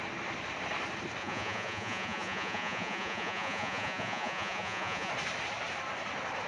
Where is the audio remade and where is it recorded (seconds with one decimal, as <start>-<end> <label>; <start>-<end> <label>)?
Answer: 0.0-1.2 recorded; 1.2-5.1 remade; 5.1-6.5 recorded